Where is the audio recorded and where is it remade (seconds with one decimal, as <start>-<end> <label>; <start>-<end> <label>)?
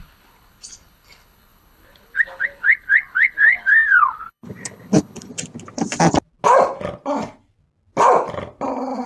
0.0-5.3 remade; 5.3-9.1 recorded